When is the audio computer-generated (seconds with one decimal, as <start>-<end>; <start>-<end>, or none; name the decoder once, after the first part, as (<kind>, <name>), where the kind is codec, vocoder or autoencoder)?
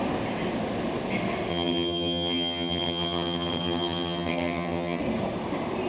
1.5-5.0 (vocoder, HiFi-GAN)